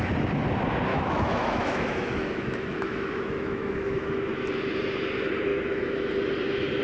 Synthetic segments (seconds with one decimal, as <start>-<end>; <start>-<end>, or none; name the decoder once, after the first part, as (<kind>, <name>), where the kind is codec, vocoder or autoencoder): 0.9-4.5 (autoencoder, DAC-VAE); 5.5-6.1